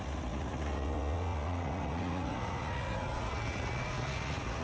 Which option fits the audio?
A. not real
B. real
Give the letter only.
A